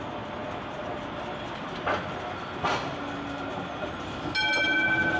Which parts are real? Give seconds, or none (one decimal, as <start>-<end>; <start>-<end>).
0.0-5.2